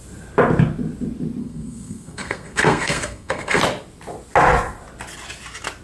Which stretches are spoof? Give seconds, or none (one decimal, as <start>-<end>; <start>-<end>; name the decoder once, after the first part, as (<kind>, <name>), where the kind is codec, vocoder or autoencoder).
1.4-3.6 (codec, SNAC)